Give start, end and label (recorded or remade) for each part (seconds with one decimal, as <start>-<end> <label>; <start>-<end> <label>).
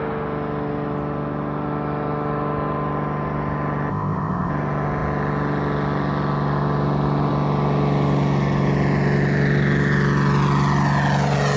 0.0-3.9 recorded; 3.9-4.5 remade; 4.5-11.6 recorded